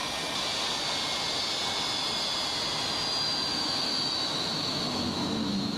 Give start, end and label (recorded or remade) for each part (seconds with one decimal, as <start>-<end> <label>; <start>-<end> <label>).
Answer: 0.0-3.5 recorded; 3.5-5.8 remade